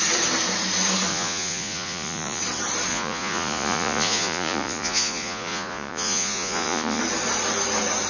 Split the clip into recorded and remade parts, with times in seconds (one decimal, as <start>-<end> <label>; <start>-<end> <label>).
0.0-1.1 recorded; 1.1-2.4 remade; 2.4-2.9 recorded; 2.9-7.0 remade; 7.0-8.1 recorded